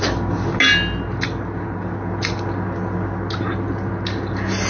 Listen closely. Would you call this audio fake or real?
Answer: real